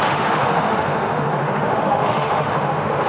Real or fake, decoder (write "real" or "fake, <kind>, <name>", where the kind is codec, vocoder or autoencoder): fake, autoencoder, DAC-VAE